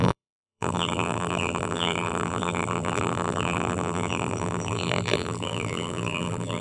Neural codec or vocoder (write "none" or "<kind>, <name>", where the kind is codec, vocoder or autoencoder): vocoder, BigVGAN v2